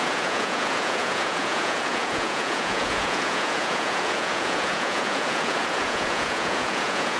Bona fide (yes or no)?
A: no